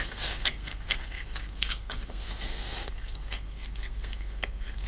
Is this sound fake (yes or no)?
yes